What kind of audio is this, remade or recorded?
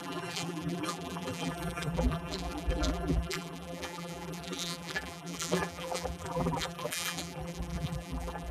remade